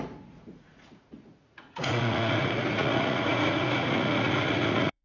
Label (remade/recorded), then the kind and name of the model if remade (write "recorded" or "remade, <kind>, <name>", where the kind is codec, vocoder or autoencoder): remade, vocoder, Vocos